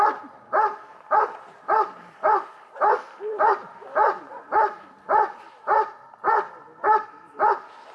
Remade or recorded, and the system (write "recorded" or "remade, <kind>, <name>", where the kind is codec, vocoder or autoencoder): remade, vocoder, BigVGAN v2